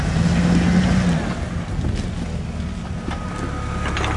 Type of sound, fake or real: real